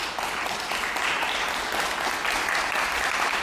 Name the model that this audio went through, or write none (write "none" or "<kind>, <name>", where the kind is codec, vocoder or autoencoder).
none